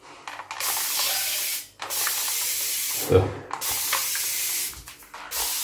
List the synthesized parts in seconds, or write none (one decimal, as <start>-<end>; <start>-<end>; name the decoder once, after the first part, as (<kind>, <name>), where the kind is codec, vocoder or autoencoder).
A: 4.0-4.5 (vocoder, BigVGAN v2)